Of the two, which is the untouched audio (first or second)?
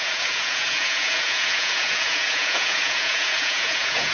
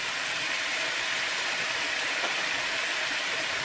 second